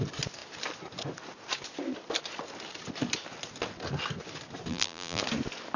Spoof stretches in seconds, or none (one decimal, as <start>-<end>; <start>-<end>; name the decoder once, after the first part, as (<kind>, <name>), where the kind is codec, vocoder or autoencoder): 4.7-5.2 (vocoder, BigVGAN v2)